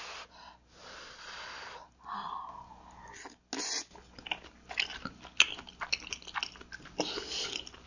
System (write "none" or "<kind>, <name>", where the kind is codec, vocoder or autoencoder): none